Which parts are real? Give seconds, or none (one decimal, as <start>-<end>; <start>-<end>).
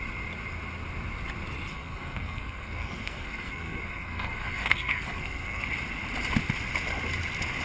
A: 0.0-1.7; 5.6-7.6